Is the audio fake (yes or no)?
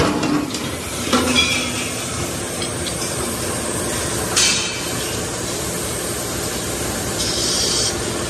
no